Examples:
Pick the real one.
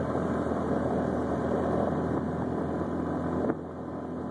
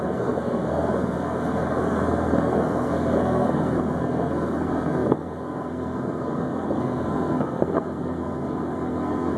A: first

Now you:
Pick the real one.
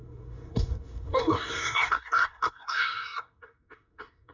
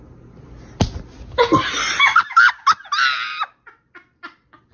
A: second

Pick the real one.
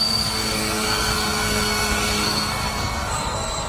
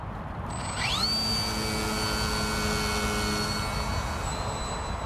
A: second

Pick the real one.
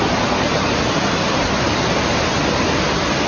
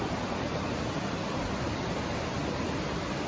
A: first